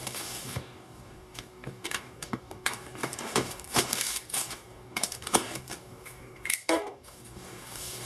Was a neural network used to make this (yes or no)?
yes